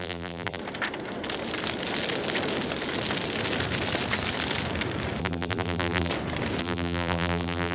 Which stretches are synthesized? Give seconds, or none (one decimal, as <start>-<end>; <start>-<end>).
0.0-0.6; 5.2-6.1; 6.6-7.7